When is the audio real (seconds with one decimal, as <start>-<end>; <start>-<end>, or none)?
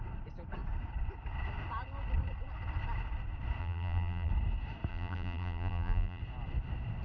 0.0-3.6; 4.3-4.9; 6.2-7.0